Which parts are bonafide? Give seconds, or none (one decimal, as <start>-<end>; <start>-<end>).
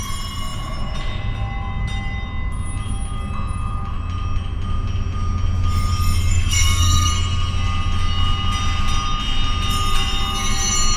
0.0-6.3; 7.1-11.0